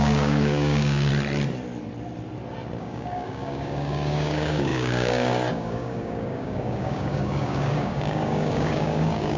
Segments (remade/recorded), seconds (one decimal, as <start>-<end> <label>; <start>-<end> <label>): 0.0-1.1 remade; 1.1-2.8 recorded; 2.8-9.4 remade